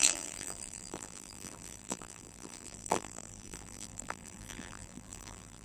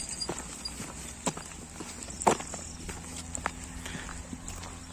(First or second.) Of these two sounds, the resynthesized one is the first